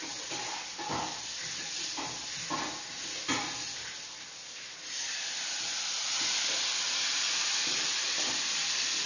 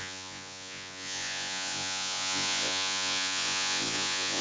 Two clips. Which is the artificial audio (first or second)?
second